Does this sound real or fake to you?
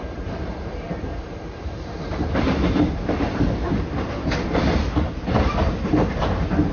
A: fake